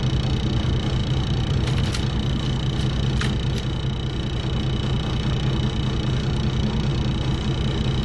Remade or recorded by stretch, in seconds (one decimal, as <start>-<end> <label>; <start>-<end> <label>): 0.0-1.0 recorded; 1.0-1.9 remade; 1.9-8.0 recorded